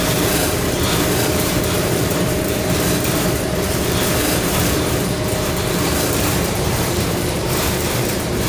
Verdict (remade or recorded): remade